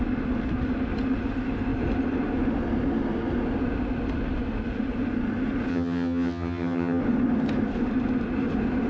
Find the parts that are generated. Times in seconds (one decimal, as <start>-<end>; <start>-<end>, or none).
5.7-7.0